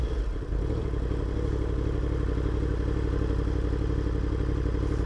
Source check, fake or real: real